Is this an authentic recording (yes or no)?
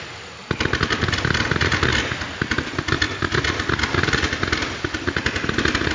yes